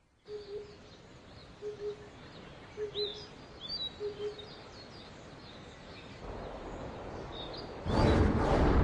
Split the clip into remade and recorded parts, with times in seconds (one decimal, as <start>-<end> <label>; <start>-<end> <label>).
0.0-1.4 remade; 1.4-2.1 recorded; 2.1-3.1 remade; 3.1-6.7 recorded; 6.7-7.3 remade; 7.3-8.2 recorded; 8.2-8.8 remade